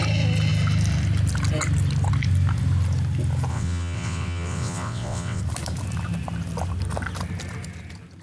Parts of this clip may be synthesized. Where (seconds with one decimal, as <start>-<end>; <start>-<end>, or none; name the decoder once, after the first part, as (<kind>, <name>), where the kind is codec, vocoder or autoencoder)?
3.5-5.4 (vocoder, WaveNeXt)